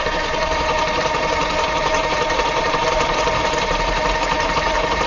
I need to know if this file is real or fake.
fake